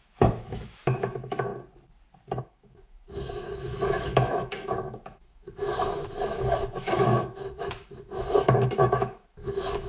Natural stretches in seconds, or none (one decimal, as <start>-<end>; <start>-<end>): 1.5-2.4